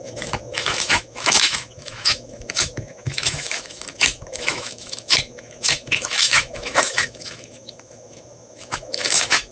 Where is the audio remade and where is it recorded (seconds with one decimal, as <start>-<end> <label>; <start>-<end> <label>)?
0.0-9.5 remade